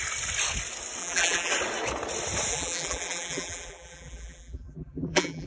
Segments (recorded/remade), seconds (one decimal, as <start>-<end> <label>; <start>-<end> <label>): 0.0-1.0 recorded; 1.0-1.5 remade; 1.5-2.5 recorded; 2.5-5.5 remade